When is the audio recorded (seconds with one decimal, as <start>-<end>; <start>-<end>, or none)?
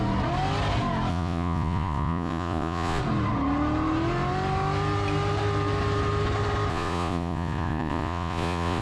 0.0-1.1; 3.0-6.7